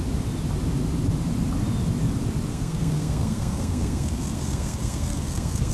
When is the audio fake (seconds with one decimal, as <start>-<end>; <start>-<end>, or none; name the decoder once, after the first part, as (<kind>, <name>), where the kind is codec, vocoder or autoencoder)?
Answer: 2.5-5.7 (codec, SNAC)